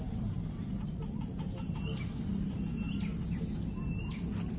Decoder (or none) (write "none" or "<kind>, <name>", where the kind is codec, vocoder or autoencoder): none